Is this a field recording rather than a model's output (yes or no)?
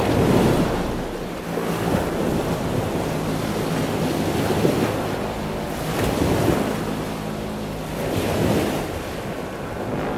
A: yes